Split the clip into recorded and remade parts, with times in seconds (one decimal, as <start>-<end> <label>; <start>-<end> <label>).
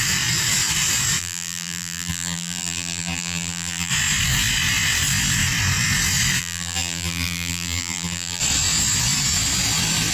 0.0-1.2 recorded; 1.2-3.9 remade; 3.9-6.4 recorded; 6.4-8.4 remade; 8.4-10.1 recorded